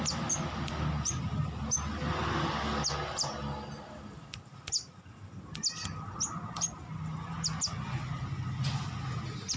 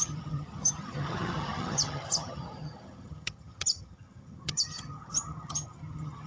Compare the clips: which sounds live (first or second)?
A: first